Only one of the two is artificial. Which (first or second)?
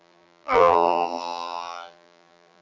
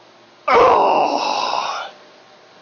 first